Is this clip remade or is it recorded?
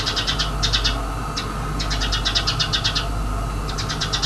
recorded